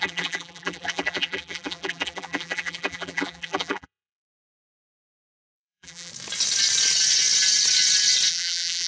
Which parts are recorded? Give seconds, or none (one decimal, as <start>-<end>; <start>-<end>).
6.1-8.3